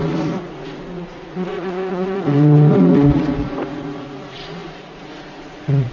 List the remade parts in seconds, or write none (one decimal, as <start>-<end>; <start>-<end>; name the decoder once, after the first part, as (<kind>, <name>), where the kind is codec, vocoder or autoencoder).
0.0-5.9 (vocoder, Vocos)